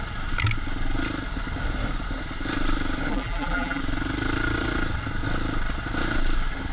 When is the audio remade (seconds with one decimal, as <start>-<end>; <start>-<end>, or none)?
3.1-3.8